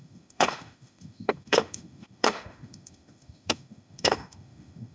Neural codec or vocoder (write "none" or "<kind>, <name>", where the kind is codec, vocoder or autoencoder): autoencoder, DAC-VAE